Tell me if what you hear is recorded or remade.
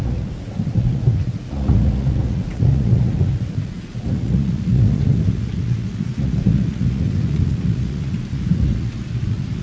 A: remade